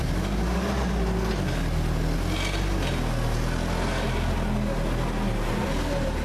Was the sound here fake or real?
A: real